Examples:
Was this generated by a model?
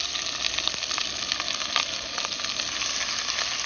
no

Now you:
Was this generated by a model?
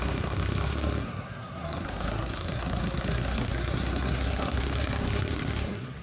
yes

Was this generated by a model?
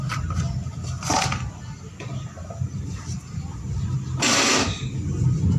no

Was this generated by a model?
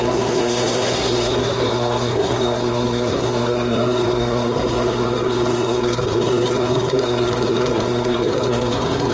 yes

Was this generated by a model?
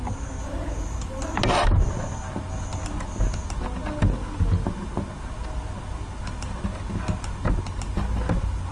no